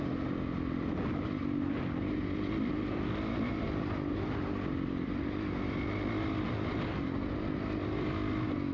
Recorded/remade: recorded